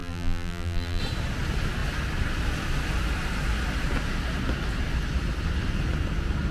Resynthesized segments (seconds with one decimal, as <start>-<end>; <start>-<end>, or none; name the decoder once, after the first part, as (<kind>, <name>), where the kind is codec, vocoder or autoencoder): 0.0-1.0 (vocoder, BigVGAN v2)